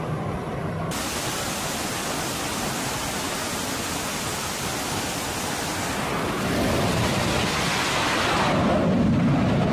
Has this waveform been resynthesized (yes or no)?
no